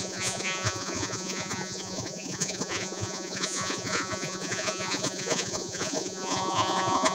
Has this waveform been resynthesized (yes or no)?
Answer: yes